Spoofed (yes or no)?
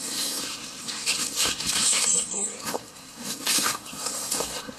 yes